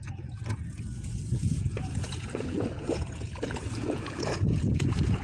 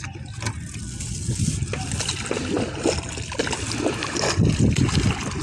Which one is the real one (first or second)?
second